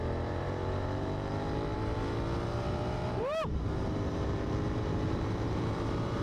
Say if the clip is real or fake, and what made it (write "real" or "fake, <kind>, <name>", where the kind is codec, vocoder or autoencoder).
fake, vocoder, BigVGAN v2